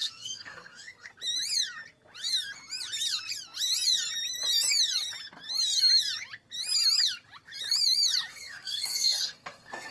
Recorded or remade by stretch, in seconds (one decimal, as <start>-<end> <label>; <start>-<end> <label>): 0.0-1.1 remade; 1.1-8.3 recorded; 8.3-9.9 remade